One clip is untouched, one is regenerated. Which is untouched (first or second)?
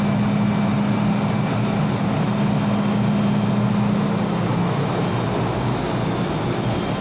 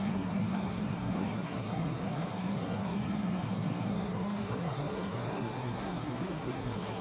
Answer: first